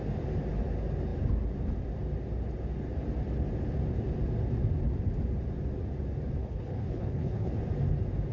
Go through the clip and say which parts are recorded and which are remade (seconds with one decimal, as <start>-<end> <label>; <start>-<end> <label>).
0.0-6.4 recorded; 6.4-7.5 remade; 7.5-8.3 recorded